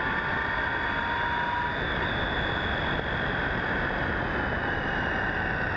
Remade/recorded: recorded